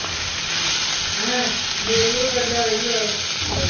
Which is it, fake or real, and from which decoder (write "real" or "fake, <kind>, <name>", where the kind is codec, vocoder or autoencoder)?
real